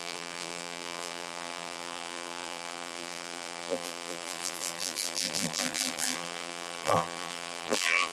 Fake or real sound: fake